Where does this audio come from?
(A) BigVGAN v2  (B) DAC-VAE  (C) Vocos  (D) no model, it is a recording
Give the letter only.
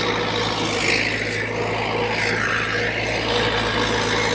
D